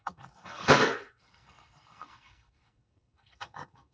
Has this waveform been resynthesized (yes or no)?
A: yes